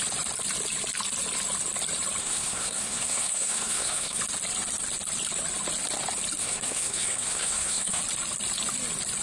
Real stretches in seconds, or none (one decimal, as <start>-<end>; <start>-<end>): 0.0-2.2; 4.2-6.4; 8.0-9.2